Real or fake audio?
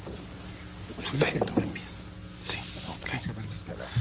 real